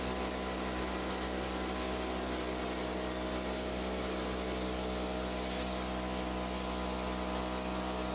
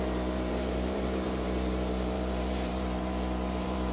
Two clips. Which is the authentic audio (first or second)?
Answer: first